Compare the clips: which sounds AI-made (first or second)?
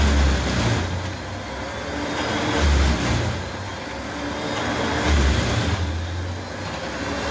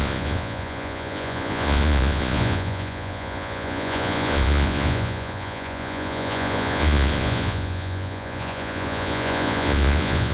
second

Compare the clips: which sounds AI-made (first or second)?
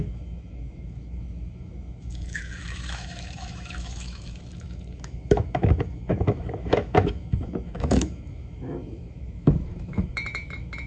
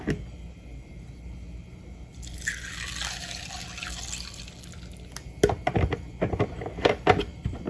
first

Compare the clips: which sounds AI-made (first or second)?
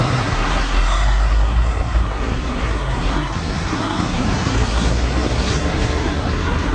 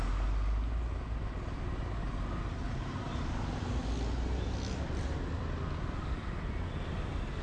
first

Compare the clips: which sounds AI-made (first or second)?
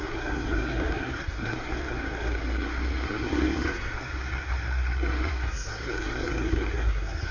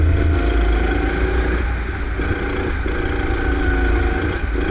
first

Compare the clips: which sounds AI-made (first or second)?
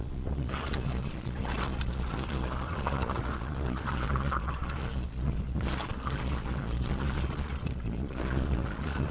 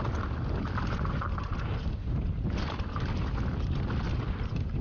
first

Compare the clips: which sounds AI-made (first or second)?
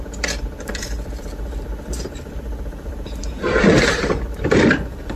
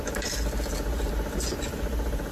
first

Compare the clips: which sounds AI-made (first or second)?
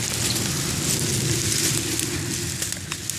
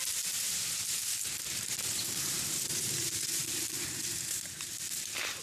second